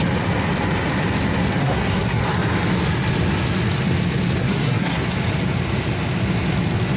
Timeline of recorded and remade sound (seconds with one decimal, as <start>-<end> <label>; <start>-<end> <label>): 0.0-1.6 recorded; 1.6-2.2 remade; 2.2-4.4 recorded; 4.4-5.0 remade; 5.0-7.0 recorded